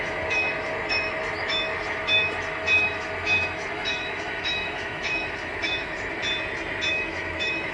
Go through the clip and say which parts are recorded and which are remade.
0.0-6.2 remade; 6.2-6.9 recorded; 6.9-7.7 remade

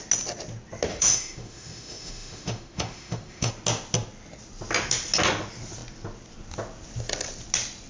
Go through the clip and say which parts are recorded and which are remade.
0.0-0.9 recorded; 0.9-3.5 remade; 3.5-7.9 recorded